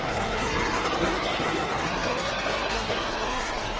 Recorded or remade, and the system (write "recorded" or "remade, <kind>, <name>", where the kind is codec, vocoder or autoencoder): remade, codec, SNAC